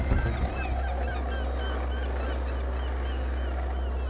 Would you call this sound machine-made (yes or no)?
no